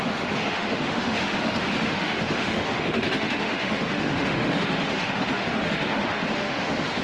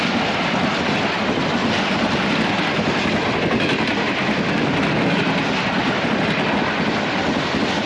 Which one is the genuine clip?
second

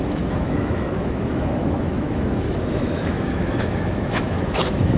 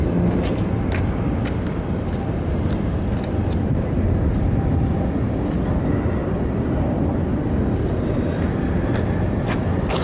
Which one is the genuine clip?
second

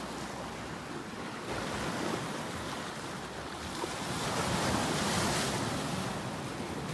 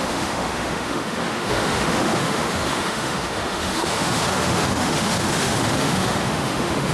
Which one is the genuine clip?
first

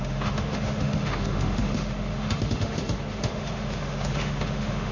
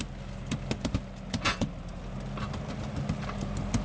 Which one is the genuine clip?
second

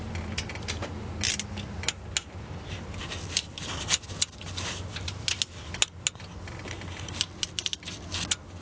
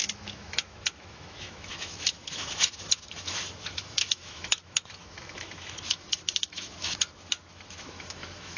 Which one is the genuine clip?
first